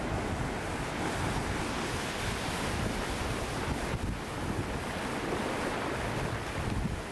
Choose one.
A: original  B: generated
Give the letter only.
A